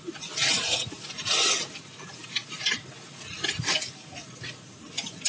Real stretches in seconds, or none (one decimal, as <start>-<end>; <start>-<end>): 0.4-2.2; 2.8-4.5